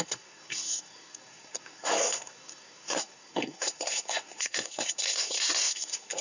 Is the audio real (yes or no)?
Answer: no